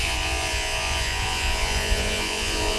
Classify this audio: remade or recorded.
remade